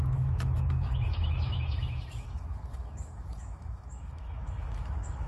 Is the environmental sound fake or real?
fake